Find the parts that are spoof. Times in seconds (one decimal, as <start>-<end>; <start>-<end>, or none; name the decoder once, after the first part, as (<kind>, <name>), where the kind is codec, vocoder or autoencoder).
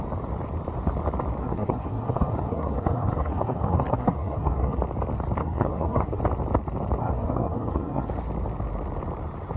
1.4-4.8 (codec, SNAC); 5.4-6.2; 7.0-8.1